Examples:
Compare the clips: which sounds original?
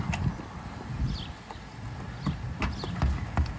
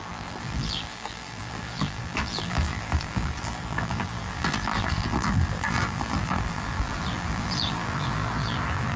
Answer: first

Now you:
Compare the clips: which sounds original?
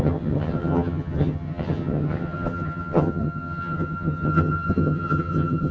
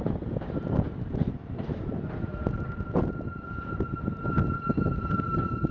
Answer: second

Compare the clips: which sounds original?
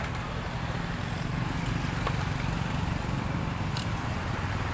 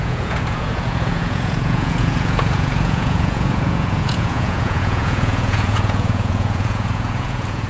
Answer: first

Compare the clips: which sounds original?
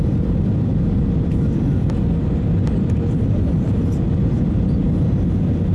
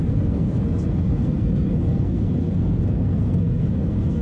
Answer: first